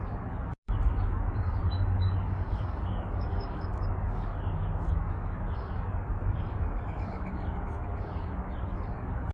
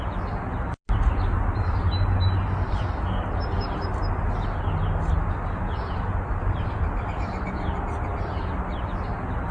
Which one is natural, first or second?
second